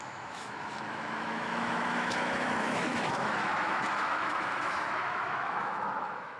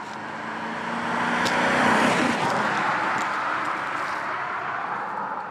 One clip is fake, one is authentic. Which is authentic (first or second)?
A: second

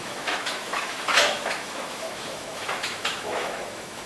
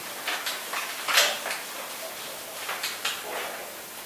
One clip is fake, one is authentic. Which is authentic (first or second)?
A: second